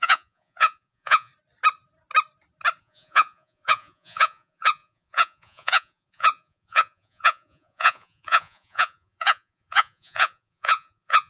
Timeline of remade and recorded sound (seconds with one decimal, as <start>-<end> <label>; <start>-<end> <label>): 0.0-1.3 remade; 1.3-2.8 recorded; 2.8-11.3 remade